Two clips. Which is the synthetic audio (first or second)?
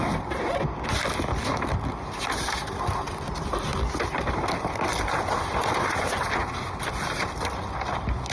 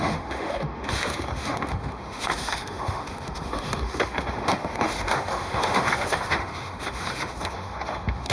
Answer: second